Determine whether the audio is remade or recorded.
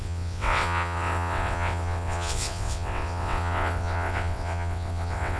remade